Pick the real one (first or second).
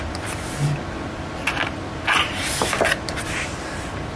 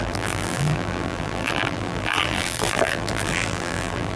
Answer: first